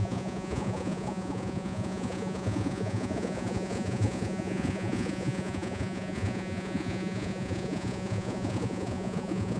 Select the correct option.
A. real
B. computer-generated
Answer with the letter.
B